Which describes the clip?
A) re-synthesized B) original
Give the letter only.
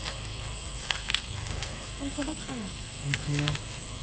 A